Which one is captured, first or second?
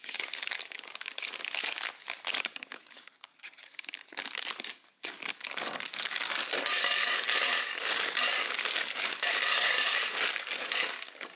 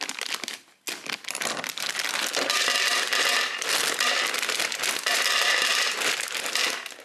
second